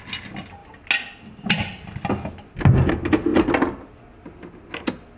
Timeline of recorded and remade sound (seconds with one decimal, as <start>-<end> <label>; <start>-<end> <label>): 0.0-5.2 recorded